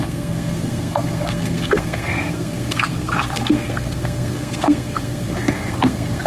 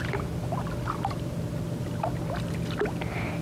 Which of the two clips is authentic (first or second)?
second